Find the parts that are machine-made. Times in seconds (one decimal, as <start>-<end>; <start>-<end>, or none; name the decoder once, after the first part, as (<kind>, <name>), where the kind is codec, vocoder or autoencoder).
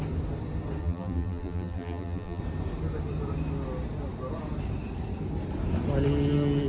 0.8-2.4 (vocoder, BigVGAN v2)